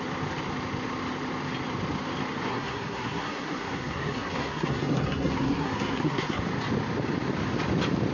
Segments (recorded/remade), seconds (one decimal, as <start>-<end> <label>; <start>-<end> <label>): 0.0-2.5 recorded; 2.5-6.4 remade; 6.4-8.1 recorded